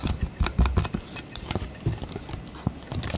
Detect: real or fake real